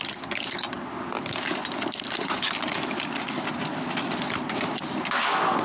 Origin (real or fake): real